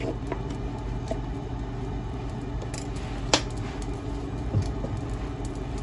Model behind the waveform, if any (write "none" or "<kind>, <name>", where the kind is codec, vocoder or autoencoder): none